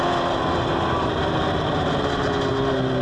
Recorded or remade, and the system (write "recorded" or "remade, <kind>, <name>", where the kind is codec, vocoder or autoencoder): recorded